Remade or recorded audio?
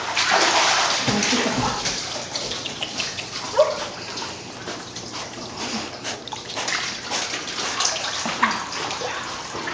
recorded